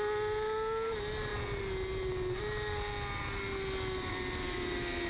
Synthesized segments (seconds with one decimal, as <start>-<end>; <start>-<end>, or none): none